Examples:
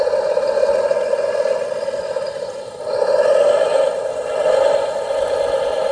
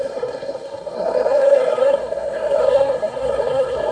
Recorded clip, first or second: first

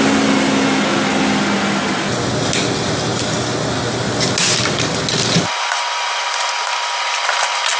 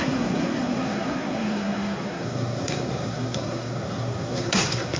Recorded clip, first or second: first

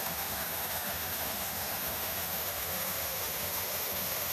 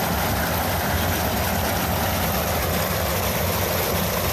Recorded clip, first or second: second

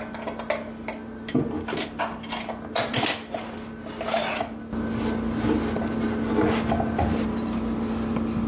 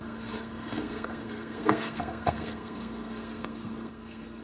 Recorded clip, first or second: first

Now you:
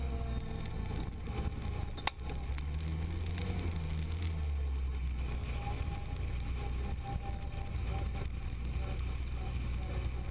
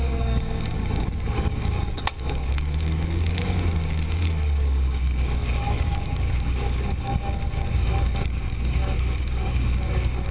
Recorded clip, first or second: first